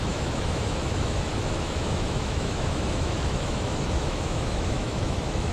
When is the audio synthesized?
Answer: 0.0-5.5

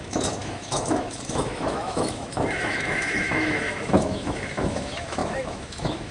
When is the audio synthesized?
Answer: 0.0-6.1

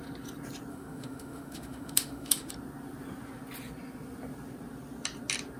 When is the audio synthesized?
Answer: 0.7-2.5

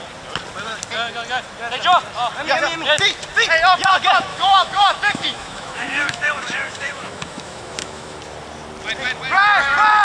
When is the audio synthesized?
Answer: 4.3-8.2

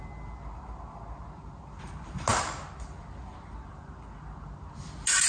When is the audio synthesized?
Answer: none

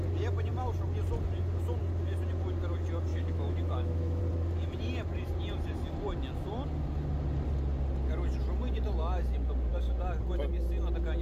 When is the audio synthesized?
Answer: 3.1-4.2